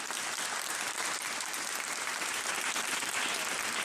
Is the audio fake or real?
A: real